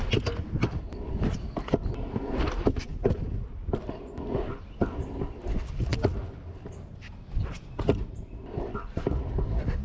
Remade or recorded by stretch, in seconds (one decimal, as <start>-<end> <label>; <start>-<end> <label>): 0.0-9.8 recorded